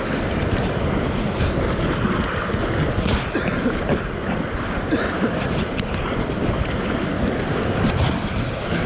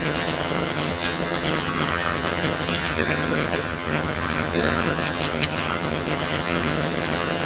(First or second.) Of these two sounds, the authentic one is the first